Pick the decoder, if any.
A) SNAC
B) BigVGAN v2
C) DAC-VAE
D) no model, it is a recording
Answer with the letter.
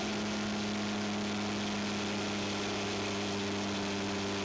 D